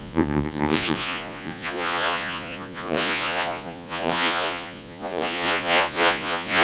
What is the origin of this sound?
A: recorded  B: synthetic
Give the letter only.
B